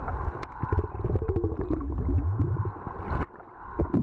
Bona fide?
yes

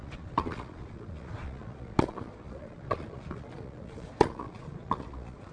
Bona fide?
no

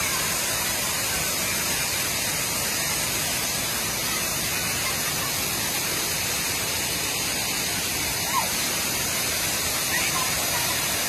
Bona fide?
yes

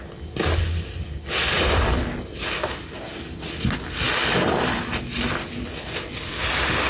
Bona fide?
yes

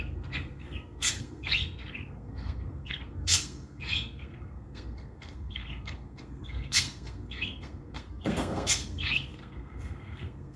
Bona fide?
no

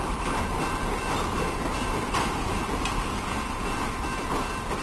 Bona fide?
yes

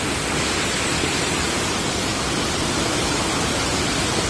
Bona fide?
yes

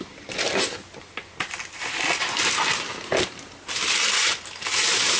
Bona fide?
yes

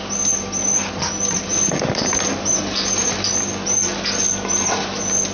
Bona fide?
yes